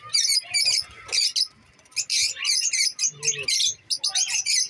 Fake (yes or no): no